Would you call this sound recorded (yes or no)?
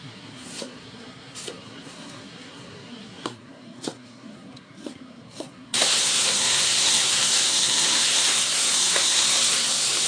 no